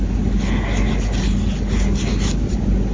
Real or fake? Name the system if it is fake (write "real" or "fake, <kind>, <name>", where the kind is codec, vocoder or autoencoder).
real